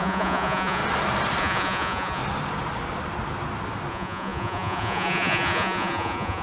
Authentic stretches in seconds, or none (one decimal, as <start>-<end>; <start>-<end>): 0.8-1.4; 2.2-3.9